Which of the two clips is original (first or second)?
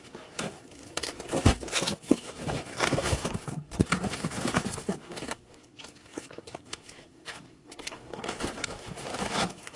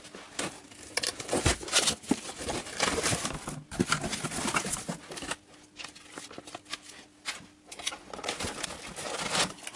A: second